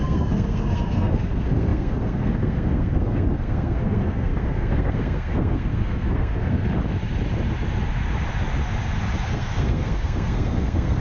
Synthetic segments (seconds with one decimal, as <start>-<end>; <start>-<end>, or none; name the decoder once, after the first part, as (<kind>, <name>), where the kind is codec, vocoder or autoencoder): 0.0-6.6 (codec, SNAC); 9.3-11.0